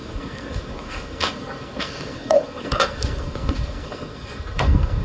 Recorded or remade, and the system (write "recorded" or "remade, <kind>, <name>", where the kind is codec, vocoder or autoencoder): remade, codec, SNAC